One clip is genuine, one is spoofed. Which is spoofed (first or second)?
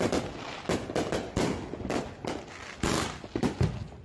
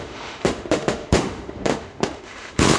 second